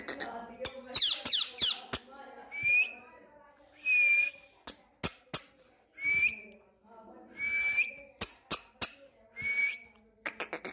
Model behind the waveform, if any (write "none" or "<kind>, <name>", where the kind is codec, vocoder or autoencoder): none